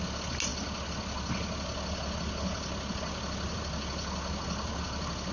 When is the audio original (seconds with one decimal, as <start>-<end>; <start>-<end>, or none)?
0.0-5.3